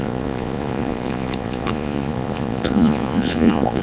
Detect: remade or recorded remade